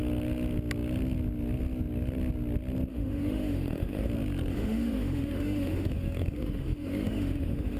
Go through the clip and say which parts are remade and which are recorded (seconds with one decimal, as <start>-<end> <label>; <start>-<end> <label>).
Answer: 0.0-2.9 recorded; 2.9-4.1 remade; 4.1-4.5 recorded; 4.5-7.8 remade